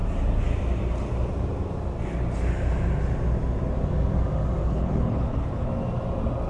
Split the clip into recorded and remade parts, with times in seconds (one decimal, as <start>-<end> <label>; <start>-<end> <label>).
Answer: 0.0-4.6 recorded; 4.6-5.7 remade; 5.7-6.5 recorded